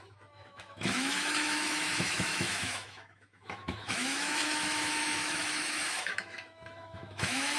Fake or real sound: fake